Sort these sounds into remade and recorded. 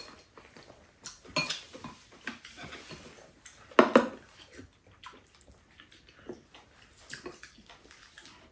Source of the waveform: recorded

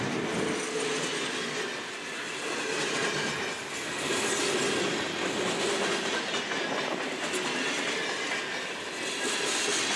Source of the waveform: recorded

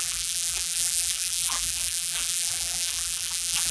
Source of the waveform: remade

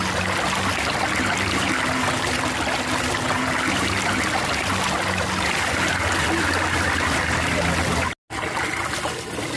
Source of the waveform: recorded